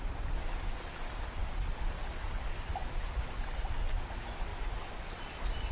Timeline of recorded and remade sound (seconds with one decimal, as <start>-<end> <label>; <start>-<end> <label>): 0.0-5.7 recorded